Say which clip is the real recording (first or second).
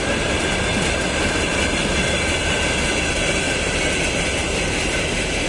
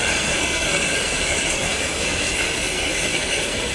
first